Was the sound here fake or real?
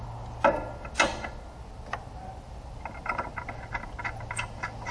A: real